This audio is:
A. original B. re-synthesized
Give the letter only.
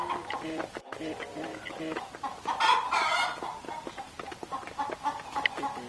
B